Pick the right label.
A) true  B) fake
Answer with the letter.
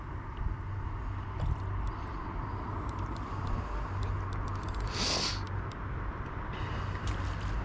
A